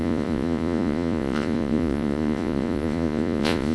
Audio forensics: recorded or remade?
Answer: remade